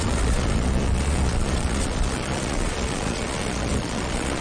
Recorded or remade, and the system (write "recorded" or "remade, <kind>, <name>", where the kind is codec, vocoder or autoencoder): remade, vocoder, Vocos